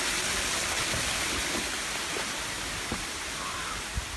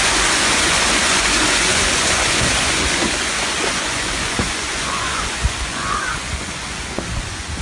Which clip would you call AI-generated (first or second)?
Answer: second